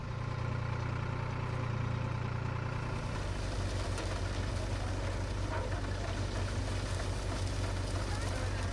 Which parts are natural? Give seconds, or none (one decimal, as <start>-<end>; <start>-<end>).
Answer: 0.0-8.7